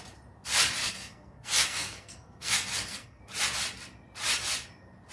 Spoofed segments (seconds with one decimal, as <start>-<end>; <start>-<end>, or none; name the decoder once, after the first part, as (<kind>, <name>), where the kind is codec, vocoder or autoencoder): 0.8-3.2 (codec, SNAC)